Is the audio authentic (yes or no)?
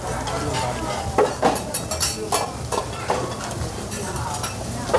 yes